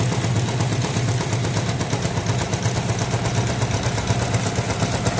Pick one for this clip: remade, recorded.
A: recorded